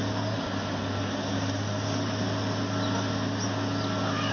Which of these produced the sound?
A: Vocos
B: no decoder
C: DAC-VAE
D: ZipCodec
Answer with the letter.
B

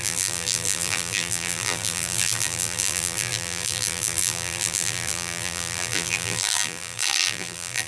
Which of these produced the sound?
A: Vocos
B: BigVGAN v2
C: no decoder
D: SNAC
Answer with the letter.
B